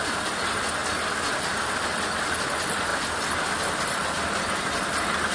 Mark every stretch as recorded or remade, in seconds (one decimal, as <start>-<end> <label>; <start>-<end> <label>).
0.0-5.3 recorded